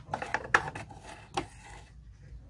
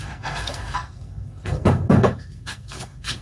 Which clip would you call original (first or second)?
first